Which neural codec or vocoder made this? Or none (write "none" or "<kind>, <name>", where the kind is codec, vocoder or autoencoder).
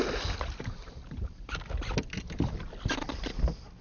none